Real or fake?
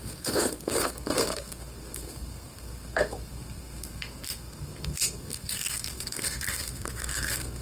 fake